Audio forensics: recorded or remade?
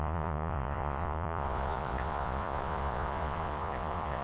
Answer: remade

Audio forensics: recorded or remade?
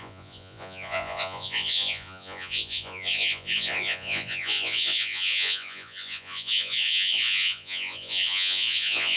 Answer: remade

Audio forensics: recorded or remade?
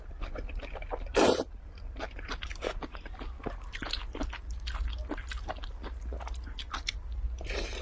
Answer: recorded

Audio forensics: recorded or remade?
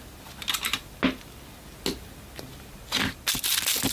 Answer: recorded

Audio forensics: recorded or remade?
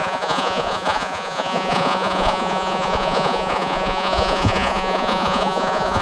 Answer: remade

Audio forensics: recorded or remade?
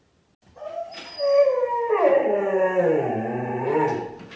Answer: recorded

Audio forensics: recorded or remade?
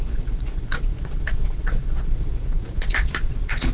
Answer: remade